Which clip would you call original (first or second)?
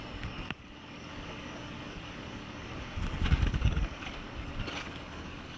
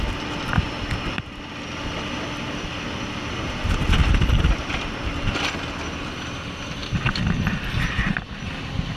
second